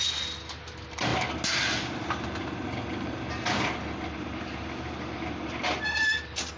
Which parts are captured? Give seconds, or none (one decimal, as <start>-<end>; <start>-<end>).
0.0-6.6